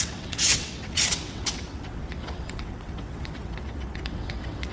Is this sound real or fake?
fake